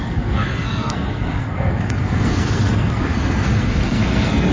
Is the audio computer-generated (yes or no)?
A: yes